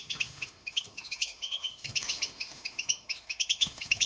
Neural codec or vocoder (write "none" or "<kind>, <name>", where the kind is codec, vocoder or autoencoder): autoencoder, DAC-VAE